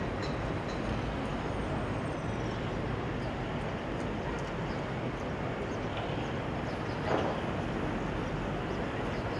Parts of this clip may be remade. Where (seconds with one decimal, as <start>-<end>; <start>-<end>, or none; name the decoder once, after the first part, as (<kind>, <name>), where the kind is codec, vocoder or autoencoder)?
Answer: none